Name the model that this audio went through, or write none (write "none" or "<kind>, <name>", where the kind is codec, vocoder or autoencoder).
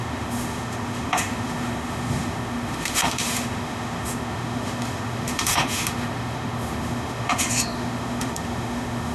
autoencoder, DAC-VAE